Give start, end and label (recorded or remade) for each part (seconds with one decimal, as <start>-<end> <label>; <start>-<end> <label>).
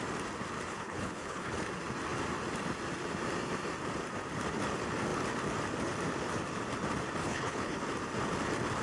0.0-0.7 recorded; 0.7-1.5 remade; 1.5-7.2 recorded; 7.2-7.8 remade; 7.8-8.8 recorded